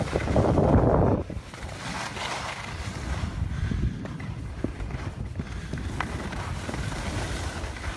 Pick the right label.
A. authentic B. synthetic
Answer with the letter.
A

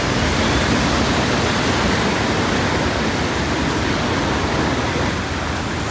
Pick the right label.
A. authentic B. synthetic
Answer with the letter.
A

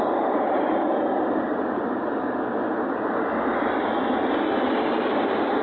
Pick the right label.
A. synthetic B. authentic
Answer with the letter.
B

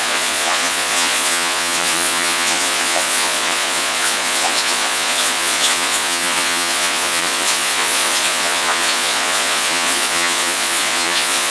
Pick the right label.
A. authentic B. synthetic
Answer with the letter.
B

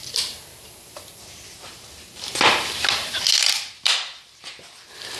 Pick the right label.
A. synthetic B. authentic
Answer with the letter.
B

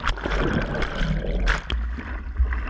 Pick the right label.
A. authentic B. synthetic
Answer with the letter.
A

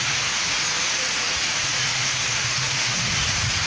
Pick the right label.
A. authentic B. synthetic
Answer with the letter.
B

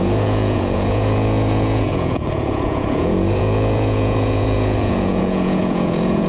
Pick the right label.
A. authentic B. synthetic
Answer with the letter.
B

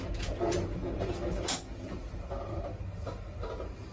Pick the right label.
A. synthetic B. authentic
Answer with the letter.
B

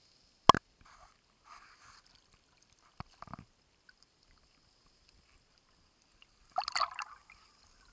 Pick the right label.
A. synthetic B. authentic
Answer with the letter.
B